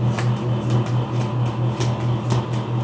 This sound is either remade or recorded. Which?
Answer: recorded